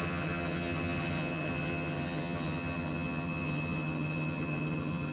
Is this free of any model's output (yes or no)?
no